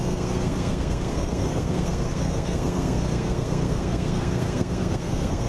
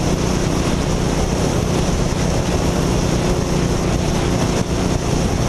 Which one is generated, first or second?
first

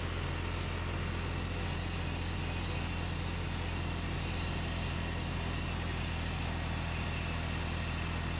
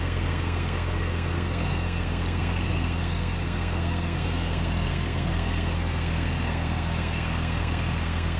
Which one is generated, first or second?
second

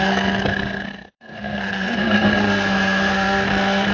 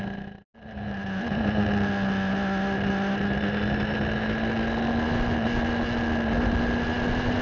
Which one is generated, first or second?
first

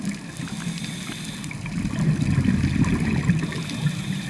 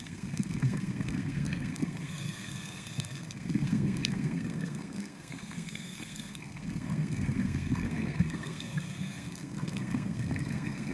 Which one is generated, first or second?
second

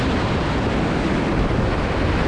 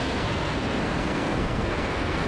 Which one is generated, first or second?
second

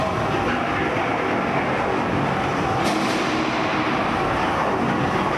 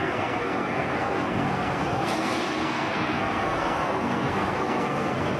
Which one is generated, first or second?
second